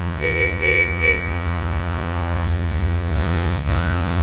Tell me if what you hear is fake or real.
fake